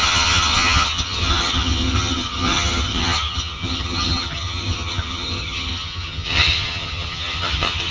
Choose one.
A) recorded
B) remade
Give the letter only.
B